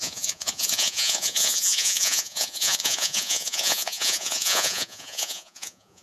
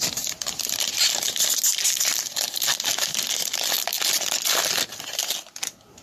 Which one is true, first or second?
second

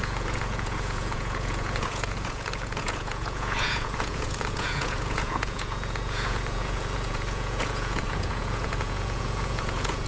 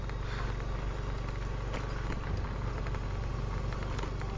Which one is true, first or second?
second